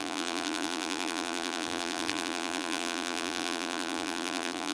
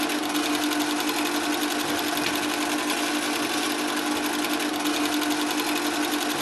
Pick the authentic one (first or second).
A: second